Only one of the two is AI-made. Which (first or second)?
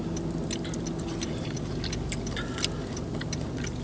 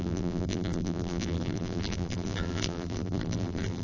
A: second